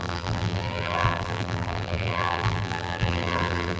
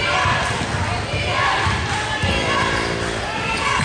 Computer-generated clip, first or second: first